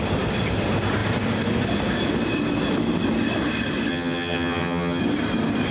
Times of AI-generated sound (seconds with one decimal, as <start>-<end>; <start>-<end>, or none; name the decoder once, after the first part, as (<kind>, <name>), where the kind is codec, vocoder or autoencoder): 3.9-5.0 (vocoder, HiFi-GAN)